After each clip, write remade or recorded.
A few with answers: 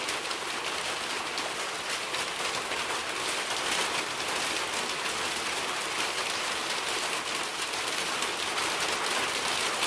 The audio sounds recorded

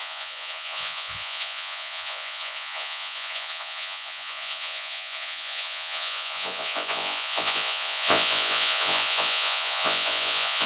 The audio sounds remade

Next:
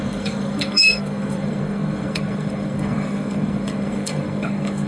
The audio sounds remade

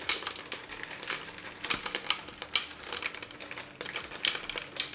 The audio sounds recorded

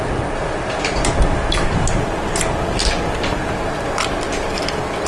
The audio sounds recorded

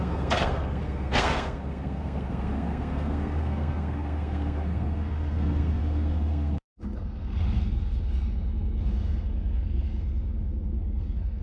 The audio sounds remade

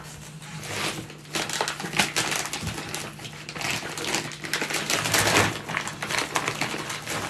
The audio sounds recorded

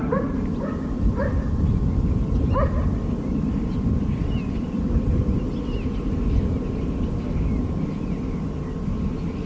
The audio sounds recorded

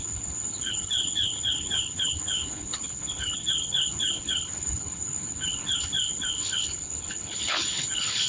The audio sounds remade